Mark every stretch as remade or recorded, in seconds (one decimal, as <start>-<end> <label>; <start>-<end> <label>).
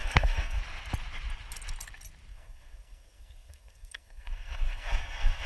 0.0-0.6 remade; 0.6-2.3 recorded; 2.3-5.5 remade